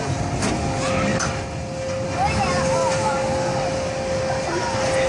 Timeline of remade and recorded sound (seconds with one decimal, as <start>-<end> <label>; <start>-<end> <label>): 0.0-5.1 recorded